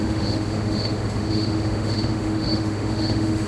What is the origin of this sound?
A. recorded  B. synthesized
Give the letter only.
B